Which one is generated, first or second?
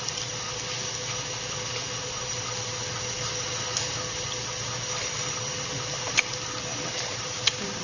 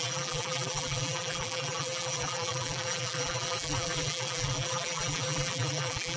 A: second